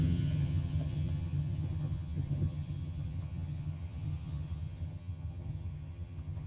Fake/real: fake